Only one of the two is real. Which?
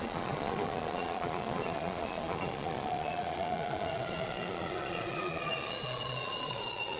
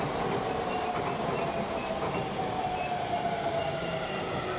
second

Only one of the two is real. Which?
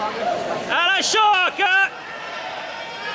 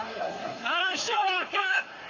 first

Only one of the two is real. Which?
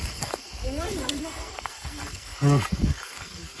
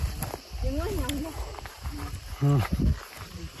second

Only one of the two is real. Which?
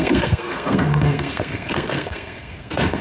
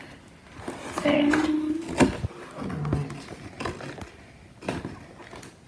second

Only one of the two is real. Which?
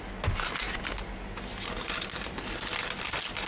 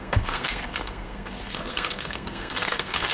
first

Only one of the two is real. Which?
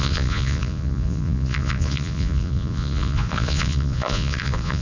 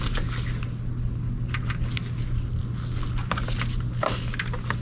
second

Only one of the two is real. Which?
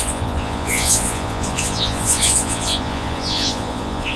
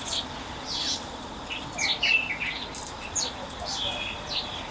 second